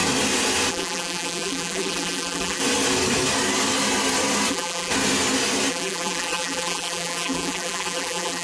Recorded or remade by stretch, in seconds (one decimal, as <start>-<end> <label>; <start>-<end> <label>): 0.0-0.7 recorded; 0.7-2.6 remade; 2.6-4.5 recorded; 4.5-4.9 remade; 4.9-5.7 recorded; 5.7-8.4 remade